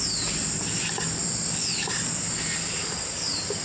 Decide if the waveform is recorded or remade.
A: recorded